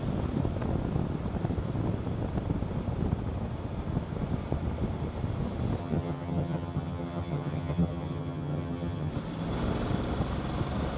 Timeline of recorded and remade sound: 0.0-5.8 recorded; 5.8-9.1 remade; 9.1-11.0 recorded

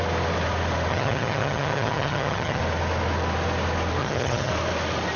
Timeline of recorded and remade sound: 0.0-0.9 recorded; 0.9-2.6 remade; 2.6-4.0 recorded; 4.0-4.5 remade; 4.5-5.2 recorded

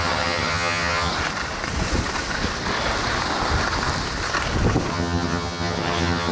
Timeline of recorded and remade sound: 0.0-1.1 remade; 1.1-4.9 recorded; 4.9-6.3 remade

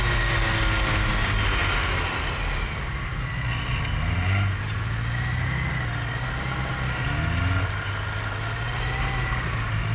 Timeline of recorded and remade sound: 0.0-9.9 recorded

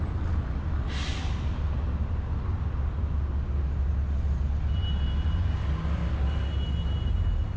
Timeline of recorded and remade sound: 0.0-7.6 recorded